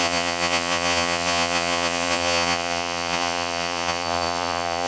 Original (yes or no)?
no